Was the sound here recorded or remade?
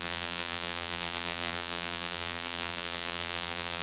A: remade